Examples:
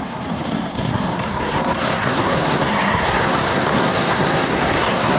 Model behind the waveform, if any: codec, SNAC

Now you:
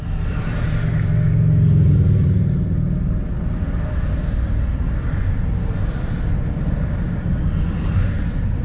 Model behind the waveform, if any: none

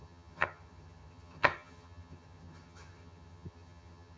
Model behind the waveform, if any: vocoder, HiFi-GAN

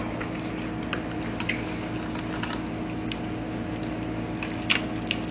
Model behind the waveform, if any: none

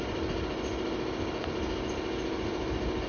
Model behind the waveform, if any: none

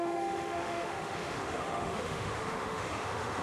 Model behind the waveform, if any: autoencoder, DAC-VAE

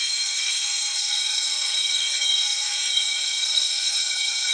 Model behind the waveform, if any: codec, SNAC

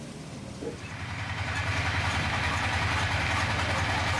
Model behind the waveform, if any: vocoder, BigVGAN v2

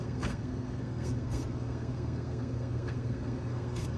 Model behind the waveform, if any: codec, SNAC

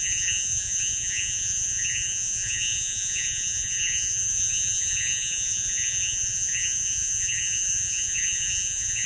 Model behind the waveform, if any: vocoder, Vocos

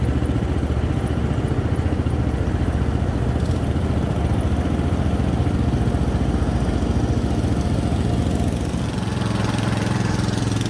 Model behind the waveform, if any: none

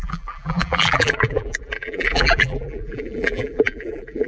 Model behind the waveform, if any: vocoder, BigVGAN v2